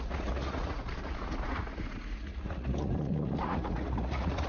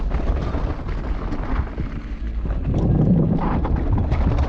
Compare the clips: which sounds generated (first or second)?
first